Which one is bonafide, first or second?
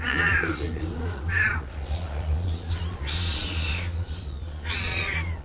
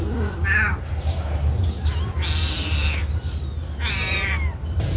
second